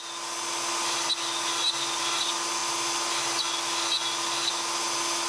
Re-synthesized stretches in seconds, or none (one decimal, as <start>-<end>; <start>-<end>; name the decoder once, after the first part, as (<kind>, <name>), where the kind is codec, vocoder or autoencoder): none